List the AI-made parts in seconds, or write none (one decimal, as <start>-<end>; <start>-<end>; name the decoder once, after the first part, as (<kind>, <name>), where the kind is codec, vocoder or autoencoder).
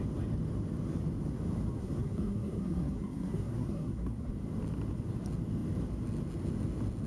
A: 1.8-4.3 (codec, SNAC)